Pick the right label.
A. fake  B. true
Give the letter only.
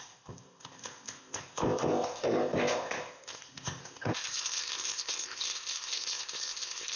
A